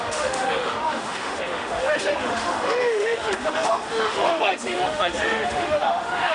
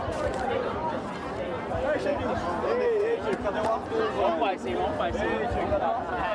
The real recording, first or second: second